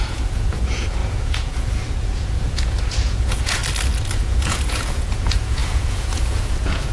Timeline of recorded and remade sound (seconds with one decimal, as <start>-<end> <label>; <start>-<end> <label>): 0.0-3.6 remade; 3.6-4.1 recorded; 4.1-6.9 remade

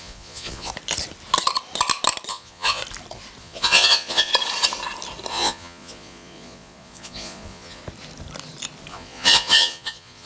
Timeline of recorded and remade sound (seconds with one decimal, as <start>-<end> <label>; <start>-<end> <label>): 0.0-0.7 remade; 0.7-2.3 recorded; 2.3-2.8 remade; 2.8-3.4 recorded; 3.4-4.3 remade; 4.3-5.3 recorded; 5.3-7.8 remade; 7.8-8.9 recorded; 8.9-10.3 remade